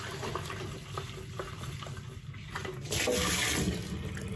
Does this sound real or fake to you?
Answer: real